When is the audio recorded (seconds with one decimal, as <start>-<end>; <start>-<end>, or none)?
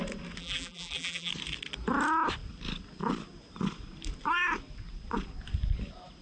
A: 0.0-0.4; 1.3-6.2